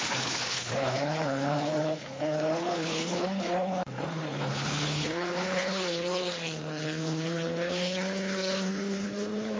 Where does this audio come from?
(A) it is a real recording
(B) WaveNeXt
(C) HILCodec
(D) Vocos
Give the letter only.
C